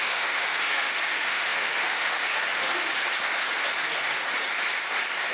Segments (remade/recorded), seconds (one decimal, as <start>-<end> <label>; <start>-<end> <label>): 0.0-2.9 remade; 2.9-5.3 recorded

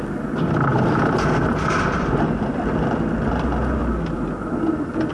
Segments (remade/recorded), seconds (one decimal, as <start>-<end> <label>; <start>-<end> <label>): 0.0-5.1 recorded

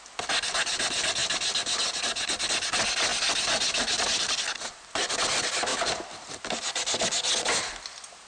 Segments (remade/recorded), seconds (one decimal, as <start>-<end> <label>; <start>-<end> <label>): 0.0-8.3 recorded

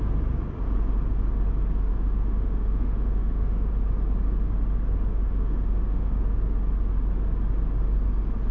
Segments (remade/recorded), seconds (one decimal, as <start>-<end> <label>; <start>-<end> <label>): 0.0-1.9 recorded; 1.9-3.7 remade; 3.7-5.1 recorded; 5.1-6.1 remade; 6.1-8.5 recorded